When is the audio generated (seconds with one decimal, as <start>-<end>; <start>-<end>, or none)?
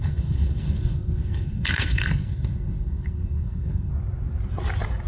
0.0-3.9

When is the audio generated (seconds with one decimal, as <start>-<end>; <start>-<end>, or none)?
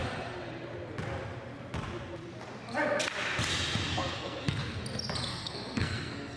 3.9-4.8; 5.3-6.4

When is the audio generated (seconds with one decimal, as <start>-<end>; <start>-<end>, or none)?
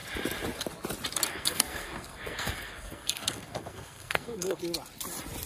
1.3-4.6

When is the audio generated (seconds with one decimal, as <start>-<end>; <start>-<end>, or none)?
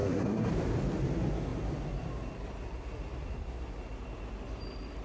0.0-0.5